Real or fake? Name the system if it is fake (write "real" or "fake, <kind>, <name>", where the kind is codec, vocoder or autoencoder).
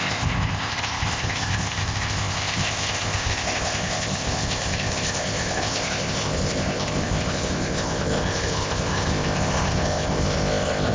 fake, codec, ZipCodec